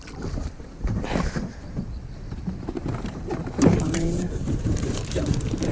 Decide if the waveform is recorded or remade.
remade